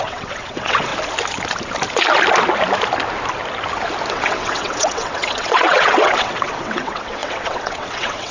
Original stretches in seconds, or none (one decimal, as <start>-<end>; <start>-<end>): 0.9-4.1